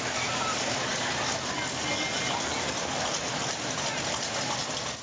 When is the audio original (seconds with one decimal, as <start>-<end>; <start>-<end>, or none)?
0.0-5.0